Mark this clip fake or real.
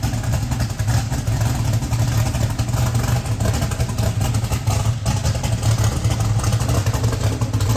real